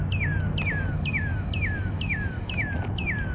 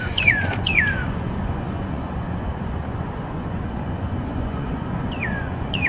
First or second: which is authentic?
first